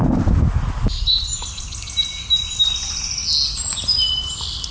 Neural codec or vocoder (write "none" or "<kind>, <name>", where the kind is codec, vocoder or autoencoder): none